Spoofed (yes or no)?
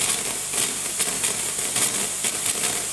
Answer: no